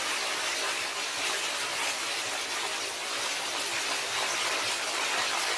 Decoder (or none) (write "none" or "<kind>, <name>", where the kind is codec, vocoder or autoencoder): none